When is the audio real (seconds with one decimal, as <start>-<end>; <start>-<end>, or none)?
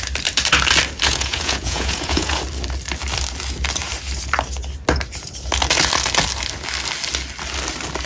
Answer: 0.0-1.1; 2.4-8.1